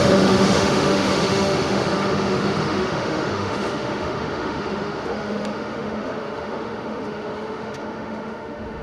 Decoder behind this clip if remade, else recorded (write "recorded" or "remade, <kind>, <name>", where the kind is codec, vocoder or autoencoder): remade, autoencoder, DAC-VAE